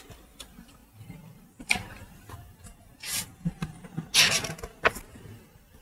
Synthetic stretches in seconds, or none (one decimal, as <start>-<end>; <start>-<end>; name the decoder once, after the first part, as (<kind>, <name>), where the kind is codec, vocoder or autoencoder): none